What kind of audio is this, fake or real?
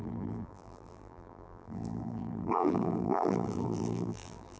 fake